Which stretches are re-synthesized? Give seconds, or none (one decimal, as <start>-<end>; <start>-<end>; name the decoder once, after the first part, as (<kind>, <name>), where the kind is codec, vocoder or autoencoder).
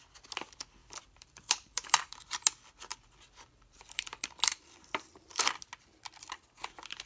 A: 0.8-2.3 (vocoder, BigVGAN v2); 2.9-5.2